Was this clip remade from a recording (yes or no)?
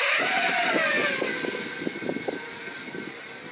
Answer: no